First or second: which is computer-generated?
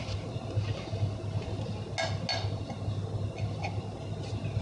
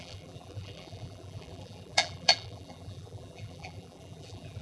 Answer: second